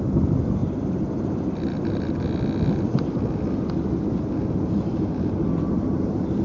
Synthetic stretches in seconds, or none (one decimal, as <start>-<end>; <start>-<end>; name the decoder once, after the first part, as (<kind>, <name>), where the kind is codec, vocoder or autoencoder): none